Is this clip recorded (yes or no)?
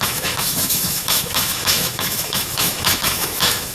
no